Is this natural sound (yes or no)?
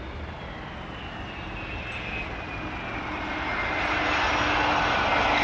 yes